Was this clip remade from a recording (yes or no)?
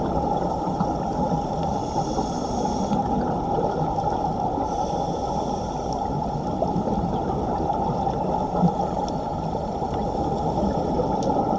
yes